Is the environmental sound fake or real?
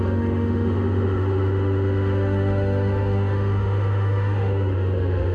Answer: fake